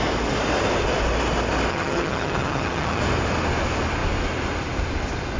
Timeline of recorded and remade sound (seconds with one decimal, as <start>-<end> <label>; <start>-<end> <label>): 0.0-1.7 recorded; 1.7-3.0 remade; 3.0-5.4 recorded

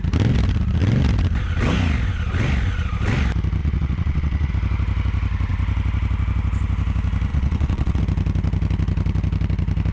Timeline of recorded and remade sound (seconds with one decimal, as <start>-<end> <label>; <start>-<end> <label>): 0.0-3.6 recorded; 3.6-4.5 remade; 4.5-7.3 recorded; 7.3-8.0 remade; 8.0-9.9 recorded

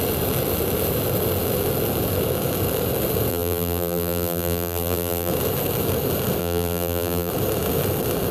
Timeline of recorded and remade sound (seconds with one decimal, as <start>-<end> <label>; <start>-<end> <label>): 0.0-3.3 recorded; 3.3-5.3 remade; 5.3-6.4 recorded; 6.4-7.3 remade; 7.3-8.3 recorded

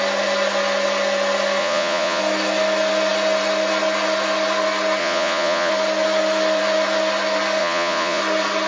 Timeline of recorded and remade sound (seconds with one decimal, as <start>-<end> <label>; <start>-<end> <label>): 0.0-1.6 recorded; 1.6-2.2 remade; 2.2-5.0 recorded; 5.0-5.7 remade; 5.7-7.6 recorded; 7.6-8.2 remade; 8.2-8.7 recorded